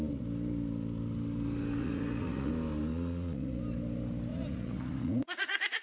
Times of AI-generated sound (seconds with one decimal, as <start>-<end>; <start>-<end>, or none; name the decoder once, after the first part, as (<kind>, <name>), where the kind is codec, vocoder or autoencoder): 1.8-2.5 (vocoder, Vocos); 2.9-3.6; 4.3-5.8